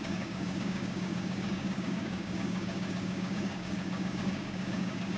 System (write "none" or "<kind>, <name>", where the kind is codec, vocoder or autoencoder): codec, DAC